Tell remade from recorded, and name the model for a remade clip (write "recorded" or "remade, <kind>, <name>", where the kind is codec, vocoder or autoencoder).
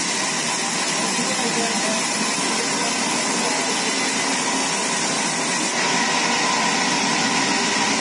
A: recorded